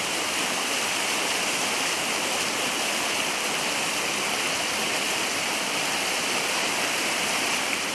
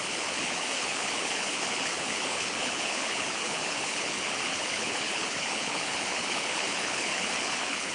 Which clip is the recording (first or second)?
first